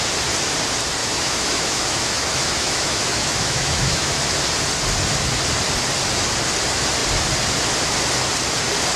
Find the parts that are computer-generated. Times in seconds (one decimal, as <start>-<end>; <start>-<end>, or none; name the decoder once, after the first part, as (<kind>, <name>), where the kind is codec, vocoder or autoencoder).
1.0-4.2 (autoencoder, DAC-VAE)